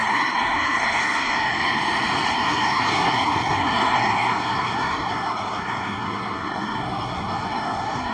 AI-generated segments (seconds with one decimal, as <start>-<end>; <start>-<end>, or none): 0.0-1.5; 2.3-8.1